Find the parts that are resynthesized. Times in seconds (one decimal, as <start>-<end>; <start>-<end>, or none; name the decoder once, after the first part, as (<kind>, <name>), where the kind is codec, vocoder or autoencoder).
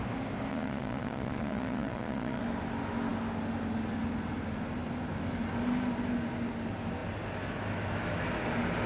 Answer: 0.5-2.4 (vocoder, Vocos)